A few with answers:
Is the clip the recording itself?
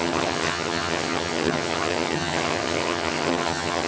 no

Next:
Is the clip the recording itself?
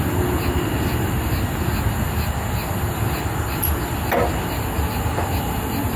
yes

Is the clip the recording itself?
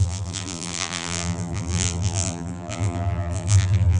no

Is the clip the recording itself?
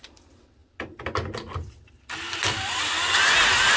yes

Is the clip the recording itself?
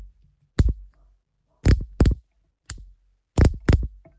yes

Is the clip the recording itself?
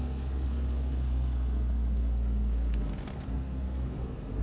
no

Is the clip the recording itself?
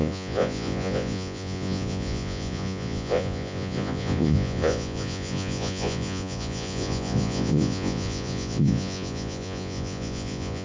no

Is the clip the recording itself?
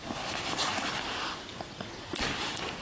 yes